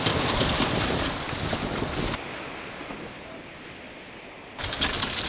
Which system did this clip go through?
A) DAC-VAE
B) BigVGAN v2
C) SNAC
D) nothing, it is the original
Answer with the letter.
D